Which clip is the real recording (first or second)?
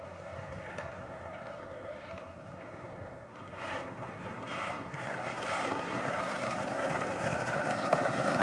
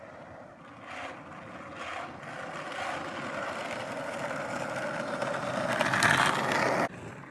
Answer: second